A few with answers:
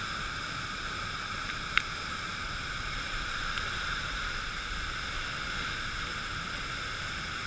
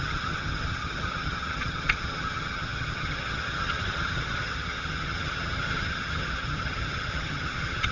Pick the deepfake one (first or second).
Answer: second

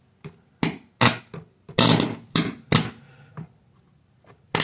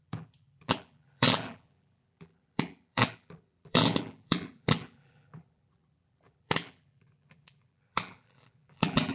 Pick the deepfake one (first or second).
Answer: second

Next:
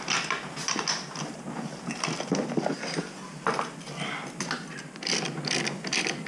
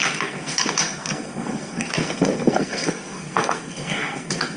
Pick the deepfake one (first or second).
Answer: second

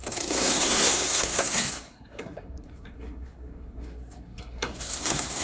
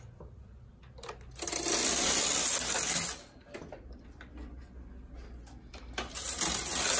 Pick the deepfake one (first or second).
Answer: first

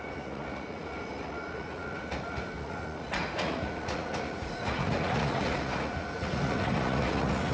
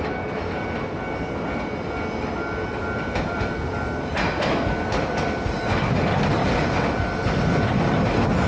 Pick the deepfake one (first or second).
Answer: first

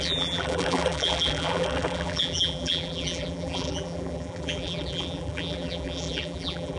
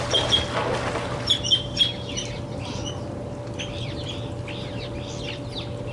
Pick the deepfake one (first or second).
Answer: first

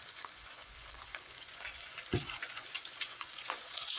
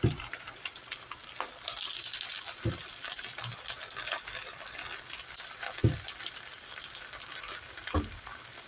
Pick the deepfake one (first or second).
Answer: first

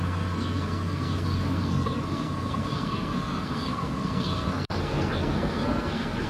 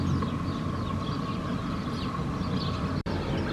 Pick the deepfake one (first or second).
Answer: first